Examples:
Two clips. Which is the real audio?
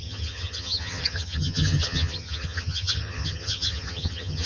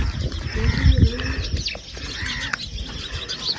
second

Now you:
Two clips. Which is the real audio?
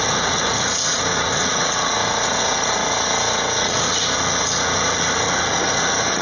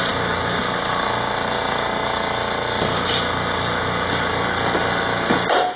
second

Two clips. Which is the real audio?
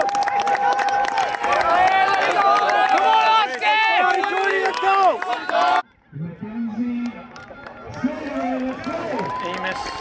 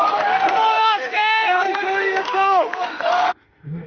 first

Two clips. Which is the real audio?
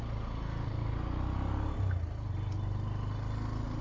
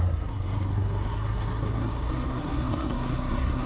first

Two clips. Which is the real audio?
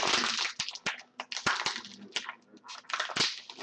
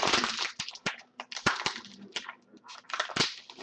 first